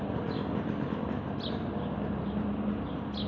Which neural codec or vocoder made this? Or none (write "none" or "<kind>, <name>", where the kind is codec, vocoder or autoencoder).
none